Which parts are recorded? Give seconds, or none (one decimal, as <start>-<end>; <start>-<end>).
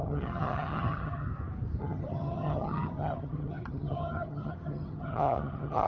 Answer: 1.3-1.8